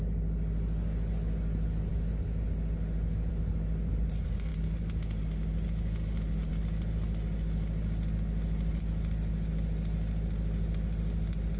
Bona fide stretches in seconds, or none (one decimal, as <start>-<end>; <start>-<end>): 0.0-11.6